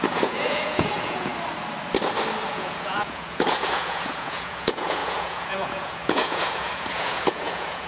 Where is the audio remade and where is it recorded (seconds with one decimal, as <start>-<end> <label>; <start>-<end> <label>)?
0.0-1.3 remade; 1.3-2.5 recorded; 2.5-7.9 remade